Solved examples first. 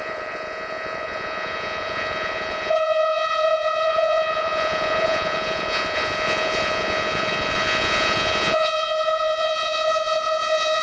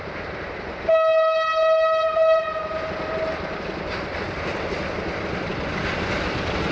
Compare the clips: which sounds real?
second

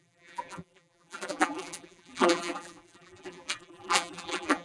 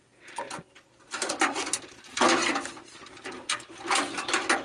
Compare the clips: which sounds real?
second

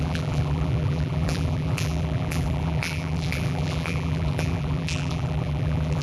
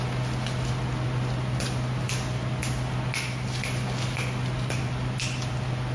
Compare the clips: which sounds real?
second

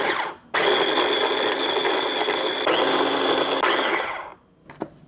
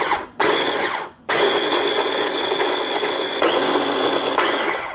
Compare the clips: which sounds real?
first